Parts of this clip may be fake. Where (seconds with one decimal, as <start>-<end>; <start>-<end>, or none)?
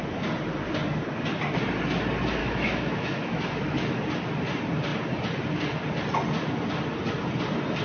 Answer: 2.4-4.0